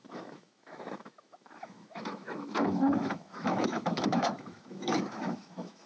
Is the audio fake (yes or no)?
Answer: yes